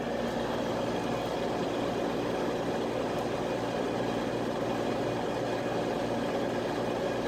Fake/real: real